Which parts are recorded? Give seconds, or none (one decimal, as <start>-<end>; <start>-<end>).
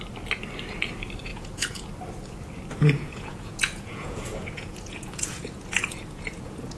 0.0-1.3; 1.9-2.8